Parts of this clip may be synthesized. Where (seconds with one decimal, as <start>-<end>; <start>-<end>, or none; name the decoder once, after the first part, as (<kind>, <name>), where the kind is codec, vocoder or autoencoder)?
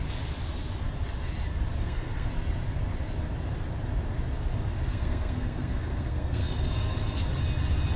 1.7-2.3 (codec, SNAC); 4.9-6.5